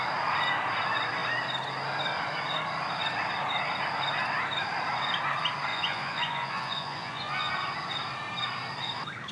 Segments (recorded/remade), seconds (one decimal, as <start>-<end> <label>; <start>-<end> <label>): 0.0-5.7 recorded; 5.7-7.5 remade; 7.5-9.3 recorded